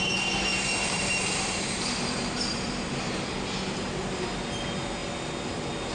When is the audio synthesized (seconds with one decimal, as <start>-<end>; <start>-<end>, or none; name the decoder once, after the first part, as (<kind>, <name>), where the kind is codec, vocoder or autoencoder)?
0.5-3.4 (vocoder, BigVGAN v2)